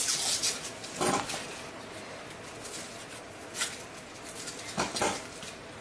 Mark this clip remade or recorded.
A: recorded